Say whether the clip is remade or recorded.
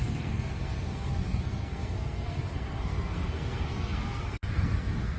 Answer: remade